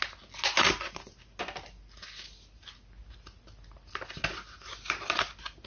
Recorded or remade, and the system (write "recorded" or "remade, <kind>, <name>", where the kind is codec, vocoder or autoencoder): recorded